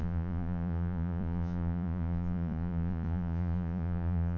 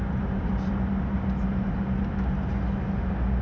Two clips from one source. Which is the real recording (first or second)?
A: second